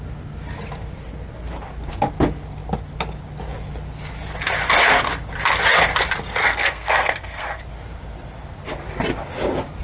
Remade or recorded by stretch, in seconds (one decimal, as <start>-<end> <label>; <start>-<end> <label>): 0.0-6.4 recorded; 6.4-7.6 remade; 7.6-9.8 recorded